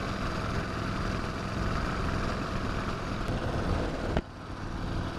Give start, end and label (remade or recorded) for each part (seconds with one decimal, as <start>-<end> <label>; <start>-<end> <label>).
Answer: 0.0-5.2 recorded